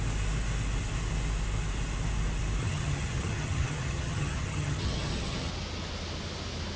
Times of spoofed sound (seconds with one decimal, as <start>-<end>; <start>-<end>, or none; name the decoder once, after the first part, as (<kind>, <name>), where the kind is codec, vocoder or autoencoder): 2.6-5.5 (vocoder, HiFi-GAN)